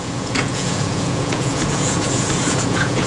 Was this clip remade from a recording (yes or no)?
yes